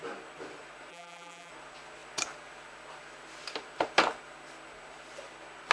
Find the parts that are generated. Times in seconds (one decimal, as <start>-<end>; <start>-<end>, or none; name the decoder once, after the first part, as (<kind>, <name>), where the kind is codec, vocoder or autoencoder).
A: 0.9-1.5 (vocoder, BigVGAN v2)